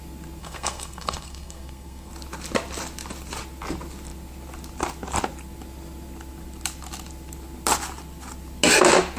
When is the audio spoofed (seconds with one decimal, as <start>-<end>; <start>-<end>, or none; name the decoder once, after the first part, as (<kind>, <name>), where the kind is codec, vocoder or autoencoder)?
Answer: 0.4-2.1 (codec, SNAC)